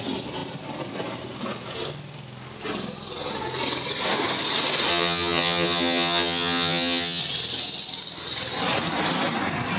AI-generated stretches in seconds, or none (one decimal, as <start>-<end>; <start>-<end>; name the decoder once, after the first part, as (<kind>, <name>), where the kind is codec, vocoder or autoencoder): 4.9-7.2 (vocoder, HiFi-GAN)